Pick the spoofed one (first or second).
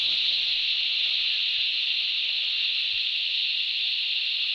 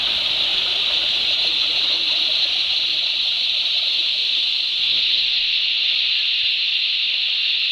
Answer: second